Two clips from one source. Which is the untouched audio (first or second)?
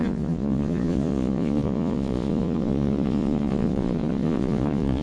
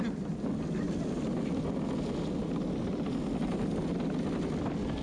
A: second